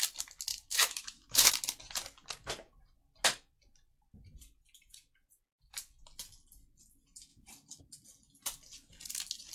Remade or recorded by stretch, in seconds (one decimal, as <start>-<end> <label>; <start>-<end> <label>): 0.0-0.5 recorded; 0.5-1.5 remade; 1.5-9.5 recorded